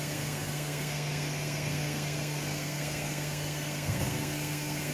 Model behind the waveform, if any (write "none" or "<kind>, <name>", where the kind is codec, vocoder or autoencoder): codec, SNAC